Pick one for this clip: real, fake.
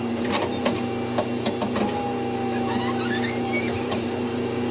real